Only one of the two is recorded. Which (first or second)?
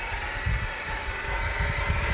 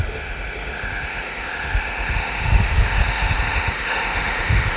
first